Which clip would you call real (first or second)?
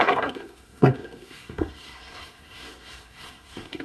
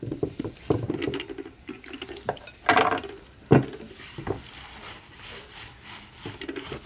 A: second